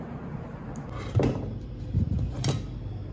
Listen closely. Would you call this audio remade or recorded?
recorded